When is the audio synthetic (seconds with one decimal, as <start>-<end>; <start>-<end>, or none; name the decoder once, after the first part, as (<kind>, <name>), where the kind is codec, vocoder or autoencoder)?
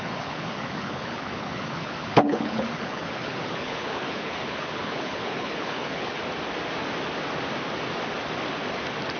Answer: 0.0-6.2 (codec, HILCodec)